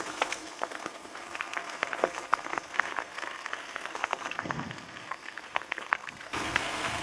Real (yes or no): no